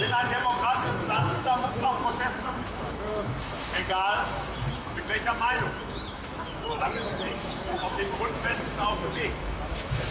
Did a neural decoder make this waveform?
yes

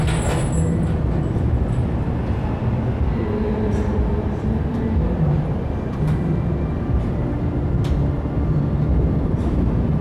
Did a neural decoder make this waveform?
no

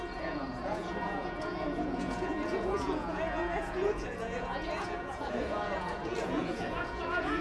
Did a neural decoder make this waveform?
yes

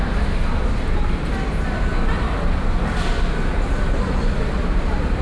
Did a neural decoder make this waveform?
no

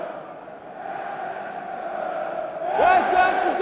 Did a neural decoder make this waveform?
no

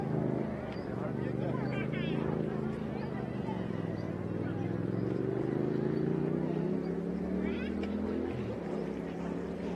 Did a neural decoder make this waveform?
no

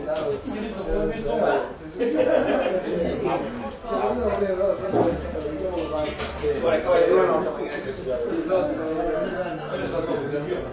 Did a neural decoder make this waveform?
no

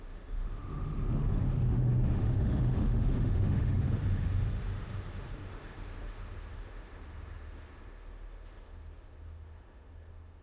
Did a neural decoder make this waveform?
yes